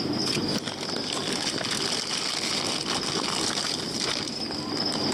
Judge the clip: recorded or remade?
recorded